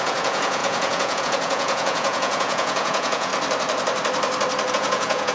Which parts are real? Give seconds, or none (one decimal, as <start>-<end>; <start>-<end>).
3.3-4.7